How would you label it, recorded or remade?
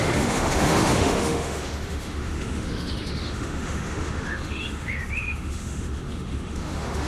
remade